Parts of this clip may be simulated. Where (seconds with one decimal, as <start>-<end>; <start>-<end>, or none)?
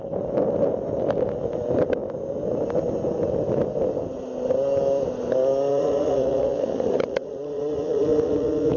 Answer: 5.7-8.8